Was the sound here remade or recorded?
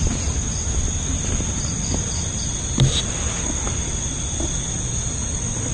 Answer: recorded